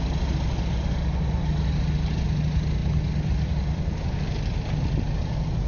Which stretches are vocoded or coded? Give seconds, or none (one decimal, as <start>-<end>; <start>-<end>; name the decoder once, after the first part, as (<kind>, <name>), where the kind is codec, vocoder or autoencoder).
none